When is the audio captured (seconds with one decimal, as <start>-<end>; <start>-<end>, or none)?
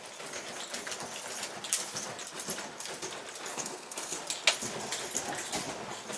0.0-3.5; 4.2-6.2